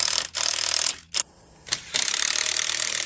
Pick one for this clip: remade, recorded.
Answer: remade